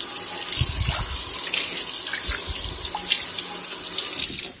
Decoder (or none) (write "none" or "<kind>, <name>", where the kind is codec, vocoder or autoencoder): none